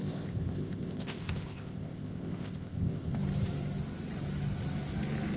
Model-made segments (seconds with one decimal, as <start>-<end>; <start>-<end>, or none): 0.0-3.2